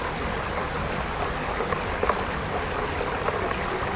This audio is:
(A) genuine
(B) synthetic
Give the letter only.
A